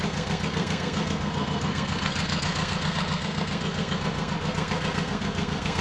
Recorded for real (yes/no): no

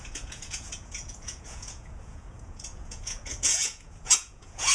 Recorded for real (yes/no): no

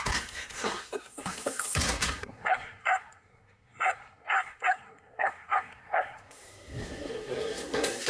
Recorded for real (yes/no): no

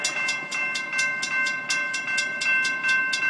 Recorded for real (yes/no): yes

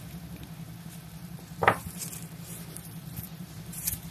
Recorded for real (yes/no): no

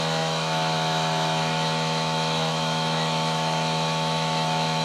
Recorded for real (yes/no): no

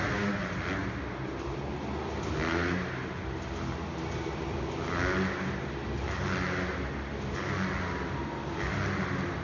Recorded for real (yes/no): yes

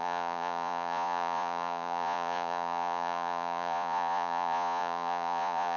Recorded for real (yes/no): no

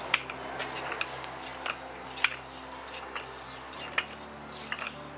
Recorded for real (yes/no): yes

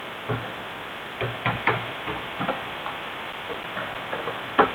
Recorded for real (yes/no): yes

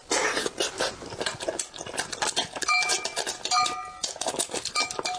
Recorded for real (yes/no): yes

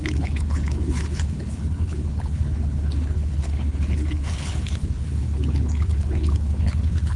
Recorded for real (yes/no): no